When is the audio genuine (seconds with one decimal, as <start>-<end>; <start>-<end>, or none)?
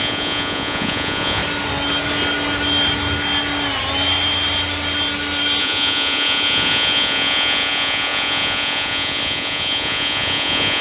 1.4-5.6